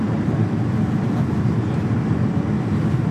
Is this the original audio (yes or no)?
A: yes